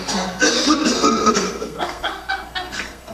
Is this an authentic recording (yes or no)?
no